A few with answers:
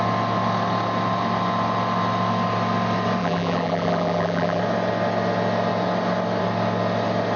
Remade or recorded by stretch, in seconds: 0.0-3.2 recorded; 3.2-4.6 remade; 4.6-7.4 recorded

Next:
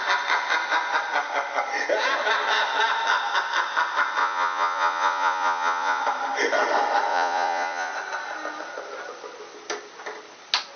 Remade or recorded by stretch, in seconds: 0.0-4.2 recorded; 4.2-6.0 remade; 6.0-7.1 recorded; 7.1-7.9 remade; 7.9-10.8 recorded

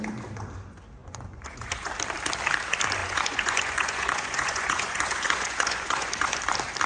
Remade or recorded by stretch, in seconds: 0.0-1.0 recorded; 1.0-1.9 remade; 1.9-3.0 recorded; 3.0-6.4 remade; 6.4-6.9 recorded